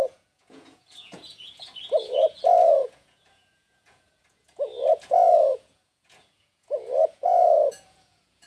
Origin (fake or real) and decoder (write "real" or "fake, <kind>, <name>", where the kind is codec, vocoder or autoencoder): fake, vocoder, Vocos